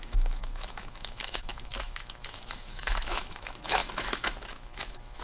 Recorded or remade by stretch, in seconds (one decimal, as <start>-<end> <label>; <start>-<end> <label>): 0.0-5.2 remade